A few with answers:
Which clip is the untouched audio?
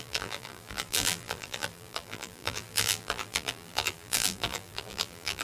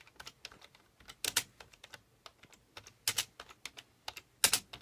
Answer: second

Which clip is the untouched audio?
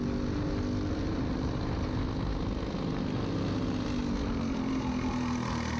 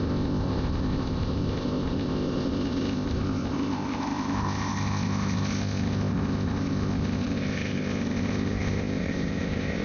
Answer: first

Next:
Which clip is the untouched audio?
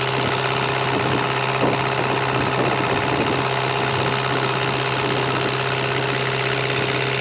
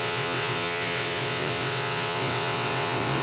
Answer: first